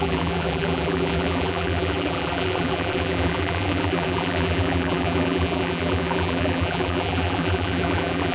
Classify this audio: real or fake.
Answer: fake